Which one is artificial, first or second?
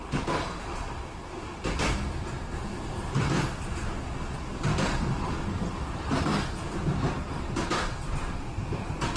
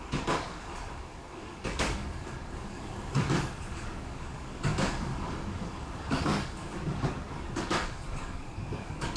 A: second